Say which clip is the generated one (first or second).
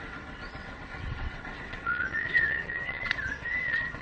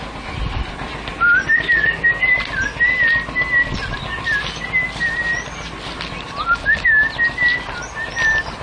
first